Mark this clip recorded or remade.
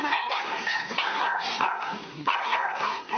remade